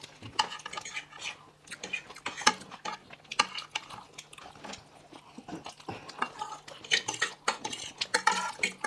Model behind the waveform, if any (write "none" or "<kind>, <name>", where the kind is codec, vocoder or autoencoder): none